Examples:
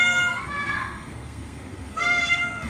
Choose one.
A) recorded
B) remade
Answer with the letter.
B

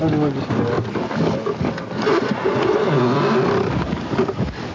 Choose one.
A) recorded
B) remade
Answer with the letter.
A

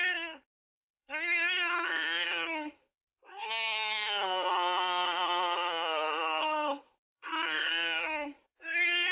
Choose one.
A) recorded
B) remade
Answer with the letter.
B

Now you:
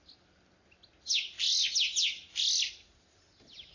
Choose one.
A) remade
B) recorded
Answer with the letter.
B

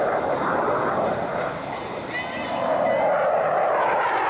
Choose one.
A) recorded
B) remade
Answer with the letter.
A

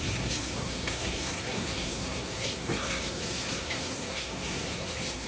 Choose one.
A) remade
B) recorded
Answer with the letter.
A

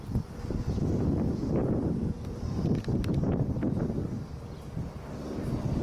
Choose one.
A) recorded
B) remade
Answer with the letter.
A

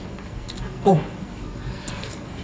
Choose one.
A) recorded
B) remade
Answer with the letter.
B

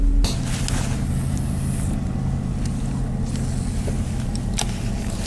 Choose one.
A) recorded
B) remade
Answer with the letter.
A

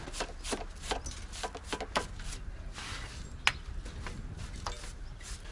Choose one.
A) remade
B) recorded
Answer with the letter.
B